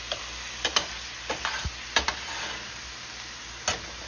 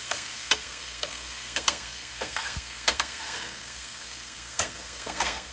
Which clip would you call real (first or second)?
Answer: first